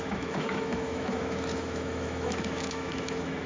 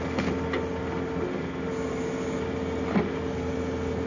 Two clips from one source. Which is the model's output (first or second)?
first